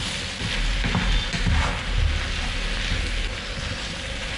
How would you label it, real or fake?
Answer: real